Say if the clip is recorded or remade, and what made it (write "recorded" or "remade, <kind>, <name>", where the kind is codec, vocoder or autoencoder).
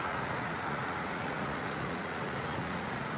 remade, vocoder, Vocos